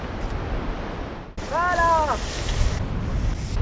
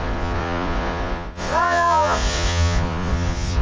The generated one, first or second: second